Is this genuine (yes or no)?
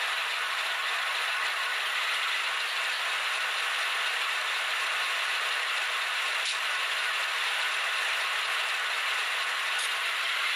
yes